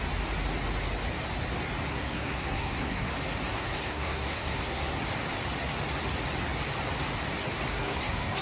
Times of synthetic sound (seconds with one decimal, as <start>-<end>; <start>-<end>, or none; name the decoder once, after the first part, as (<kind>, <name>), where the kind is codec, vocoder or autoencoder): 1.9-3.1 (codec, SNAC); 3.5-4.9; 7.7-8.4